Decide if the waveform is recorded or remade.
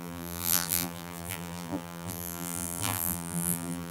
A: remade